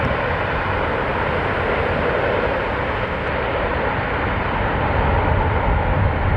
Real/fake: real